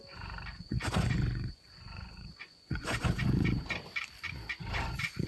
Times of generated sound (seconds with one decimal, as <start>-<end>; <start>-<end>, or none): 0.5-3.7; 4.6-5.3